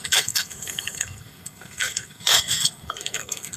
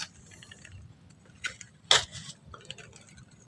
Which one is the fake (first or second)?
first